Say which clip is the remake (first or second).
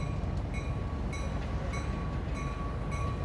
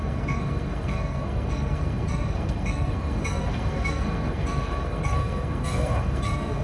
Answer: second